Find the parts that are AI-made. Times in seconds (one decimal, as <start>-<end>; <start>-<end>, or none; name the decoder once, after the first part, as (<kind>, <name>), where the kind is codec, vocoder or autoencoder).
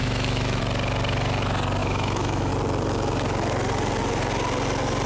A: 0.0-0.6 (autoencoder, DAC-VAE); 1.8-2.5